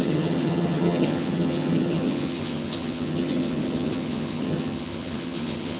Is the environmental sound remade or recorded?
remade